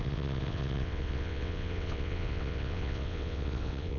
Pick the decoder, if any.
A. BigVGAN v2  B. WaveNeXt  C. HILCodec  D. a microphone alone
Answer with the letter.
B